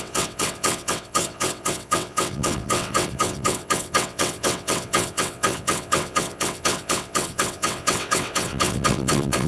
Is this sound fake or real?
fake